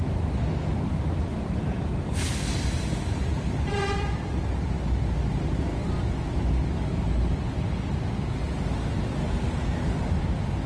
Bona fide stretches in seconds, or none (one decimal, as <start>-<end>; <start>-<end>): 0.0-10.7